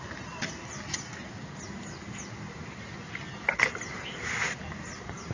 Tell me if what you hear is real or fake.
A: real